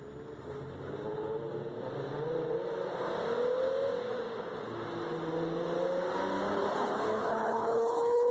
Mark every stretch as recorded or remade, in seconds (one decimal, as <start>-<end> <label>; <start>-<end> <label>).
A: 0.0-6.5 recorded; 6.5-8.3 remade